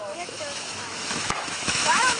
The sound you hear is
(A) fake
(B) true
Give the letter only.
A